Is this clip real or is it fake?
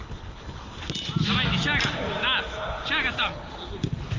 real